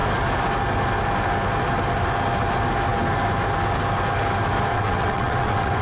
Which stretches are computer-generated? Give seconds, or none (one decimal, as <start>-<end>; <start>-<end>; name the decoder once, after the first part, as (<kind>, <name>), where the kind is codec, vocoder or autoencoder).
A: 4.7-5.8 (vocoder, WaveNeXt)